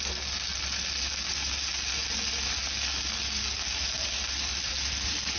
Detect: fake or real real